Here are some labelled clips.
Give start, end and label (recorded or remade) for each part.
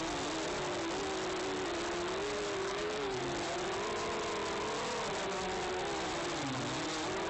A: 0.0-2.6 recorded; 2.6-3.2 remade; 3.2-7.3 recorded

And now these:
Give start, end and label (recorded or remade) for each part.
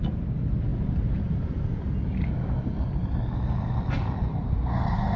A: 0.0-4.3 recorded; 4.3-5.2 remade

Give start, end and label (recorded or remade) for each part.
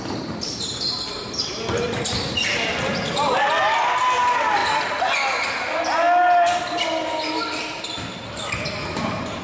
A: 0.0-9.4 recorded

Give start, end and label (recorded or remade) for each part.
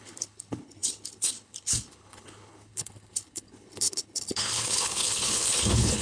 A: 0.0-6.0 remade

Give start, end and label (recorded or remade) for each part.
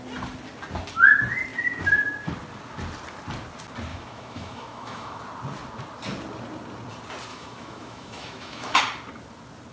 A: 0.0-3.9 recorded; 3.9-5.2 remade; 5.2-7.3 recorded; 7.3-8.8 remade; 8.8-9.7 recorded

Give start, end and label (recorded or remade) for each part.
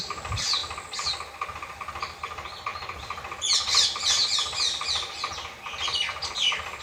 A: 0.0-6.8 recorded